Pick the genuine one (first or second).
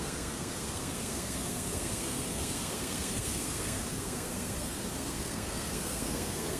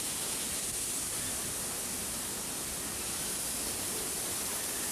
second